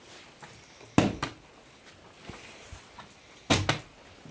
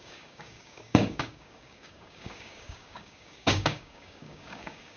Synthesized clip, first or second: second